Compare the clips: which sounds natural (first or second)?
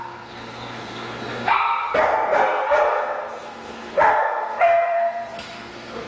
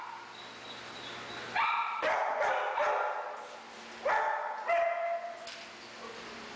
second